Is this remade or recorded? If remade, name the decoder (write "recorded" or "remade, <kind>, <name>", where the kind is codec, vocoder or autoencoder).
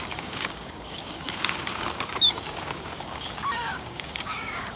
remade, codec, DAC